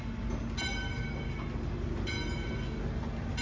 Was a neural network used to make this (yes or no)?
no